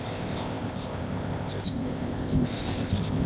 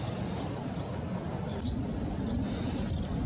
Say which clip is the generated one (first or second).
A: first